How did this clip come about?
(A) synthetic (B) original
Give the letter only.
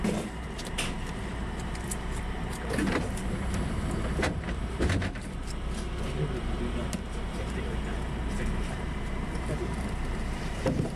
A